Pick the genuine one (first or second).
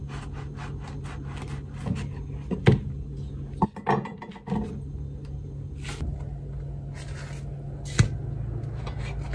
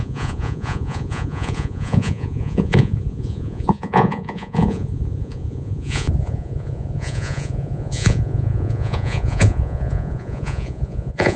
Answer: first